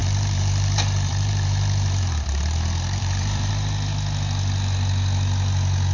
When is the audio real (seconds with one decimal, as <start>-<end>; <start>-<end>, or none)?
3.5-5.9